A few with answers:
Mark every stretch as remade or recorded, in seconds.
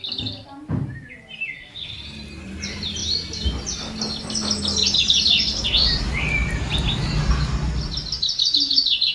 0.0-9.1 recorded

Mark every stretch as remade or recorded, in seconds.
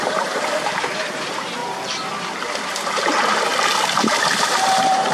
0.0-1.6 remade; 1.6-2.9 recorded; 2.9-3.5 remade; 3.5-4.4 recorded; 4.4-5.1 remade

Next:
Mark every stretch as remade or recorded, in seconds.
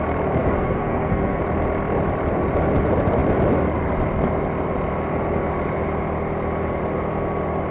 0.0-0.4 recorded; 0.4-1.4 remade; 1.4-7.7 recorded